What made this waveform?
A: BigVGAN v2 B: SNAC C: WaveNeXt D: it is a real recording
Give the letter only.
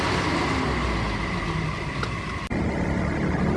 D